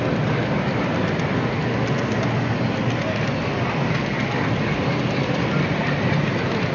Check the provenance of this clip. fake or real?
real